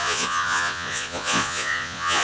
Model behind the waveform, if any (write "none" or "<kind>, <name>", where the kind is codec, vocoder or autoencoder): vocoder, Vocos